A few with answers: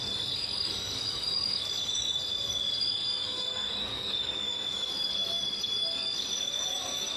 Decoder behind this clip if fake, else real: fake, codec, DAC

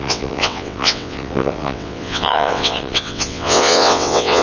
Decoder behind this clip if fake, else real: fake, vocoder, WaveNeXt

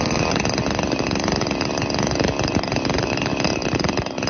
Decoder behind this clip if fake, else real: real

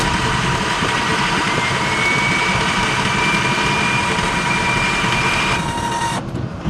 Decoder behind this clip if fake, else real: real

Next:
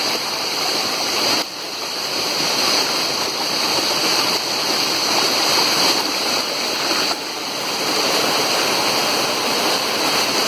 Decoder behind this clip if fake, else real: real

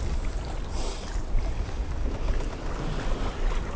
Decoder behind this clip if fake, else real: real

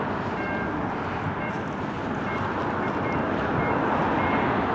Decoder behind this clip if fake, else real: real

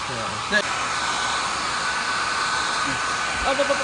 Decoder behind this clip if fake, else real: real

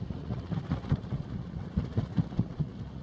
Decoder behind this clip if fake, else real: fake, vocoder, Vocos